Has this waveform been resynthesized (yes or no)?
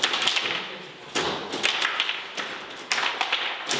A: yes